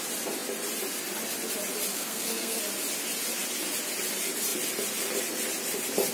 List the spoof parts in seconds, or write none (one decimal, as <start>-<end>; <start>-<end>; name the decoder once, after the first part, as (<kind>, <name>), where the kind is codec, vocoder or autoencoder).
1.9-2.6 (codec, SNAC)